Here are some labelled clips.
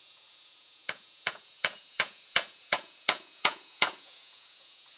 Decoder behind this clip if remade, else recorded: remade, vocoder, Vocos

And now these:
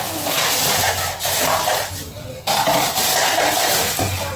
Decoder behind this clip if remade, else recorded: recorded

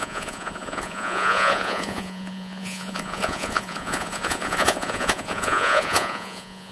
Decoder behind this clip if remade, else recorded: remade, vocoder, Vocos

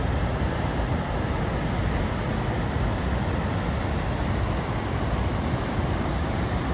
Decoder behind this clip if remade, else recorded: recorded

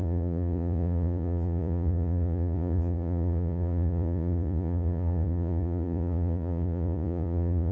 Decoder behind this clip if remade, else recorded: remade, vocoder, Vocos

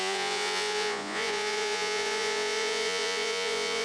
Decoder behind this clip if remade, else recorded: remade, vocoder, Vocos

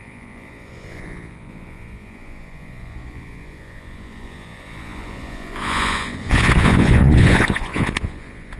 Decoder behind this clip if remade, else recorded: remade, vocoder, Vocos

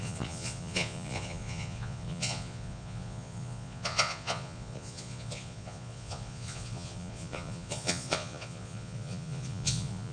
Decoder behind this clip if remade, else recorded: remade, vocoder, Vocos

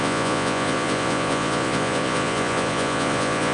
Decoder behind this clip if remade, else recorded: remade, vocoder, Vocos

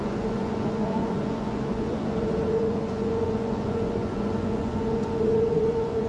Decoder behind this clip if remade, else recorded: remade, vocoder, Vocos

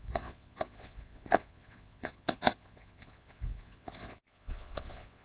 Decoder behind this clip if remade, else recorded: remade, vocoder, Vocos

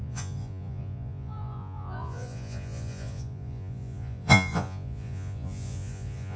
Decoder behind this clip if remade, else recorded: remade, vocoder, Vocos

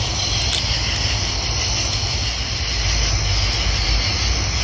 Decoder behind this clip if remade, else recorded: recorded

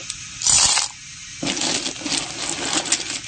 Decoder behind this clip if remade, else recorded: recorded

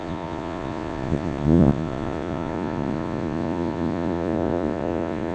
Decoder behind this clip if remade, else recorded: remade, vocoder, Vocos